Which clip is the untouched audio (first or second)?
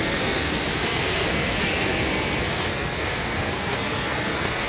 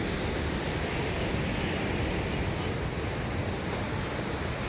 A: second